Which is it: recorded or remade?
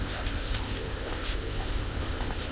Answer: remade